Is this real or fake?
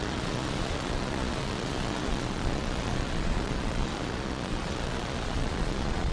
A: fake